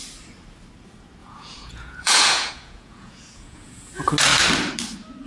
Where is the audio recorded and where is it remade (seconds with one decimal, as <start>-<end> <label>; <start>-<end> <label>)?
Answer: 0.0-1.2 recorded; 1.2-3.9 remade; 3.9-5.3 recorded